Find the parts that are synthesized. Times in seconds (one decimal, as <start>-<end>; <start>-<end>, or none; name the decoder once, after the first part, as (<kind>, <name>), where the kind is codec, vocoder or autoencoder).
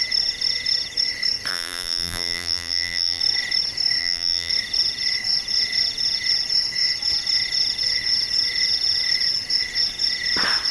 1.5-3.2 (vocoder, BigVGAN v2); 4.0-4.5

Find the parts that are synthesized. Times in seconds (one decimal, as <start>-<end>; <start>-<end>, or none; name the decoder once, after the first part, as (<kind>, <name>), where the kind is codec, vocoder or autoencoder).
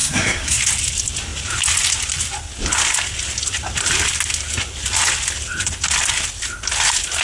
0.0-0.6 (codec, SNAC)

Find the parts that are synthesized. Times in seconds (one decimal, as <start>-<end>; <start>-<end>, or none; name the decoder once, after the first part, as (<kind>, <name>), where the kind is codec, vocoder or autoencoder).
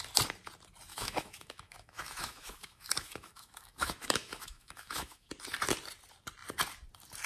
0.9-5.3 (autoencoder, DAC-VAE)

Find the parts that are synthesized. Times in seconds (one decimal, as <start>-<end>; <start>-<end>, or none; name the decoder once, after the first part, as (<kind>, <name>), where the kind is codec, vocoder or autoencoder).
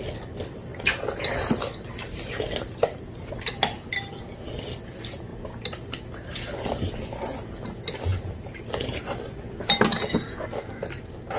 none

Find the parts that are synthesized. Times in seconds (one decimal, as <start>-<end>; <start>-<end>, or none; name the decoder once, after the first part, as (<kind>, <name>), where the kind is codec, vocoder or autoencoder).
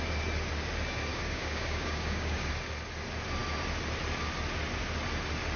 1.1-2.5 (codec, DAC)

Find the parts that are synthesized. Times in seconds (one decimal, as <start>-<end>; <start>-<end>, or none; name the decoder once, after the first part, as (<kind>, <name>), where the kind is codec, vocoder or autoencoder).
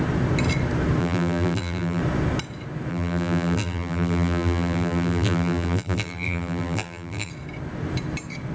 1.0-2.0 (vocoder, BigVGAN v2); 2.9-7.3